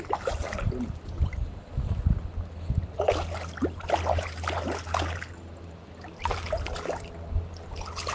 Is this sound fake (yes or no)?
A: no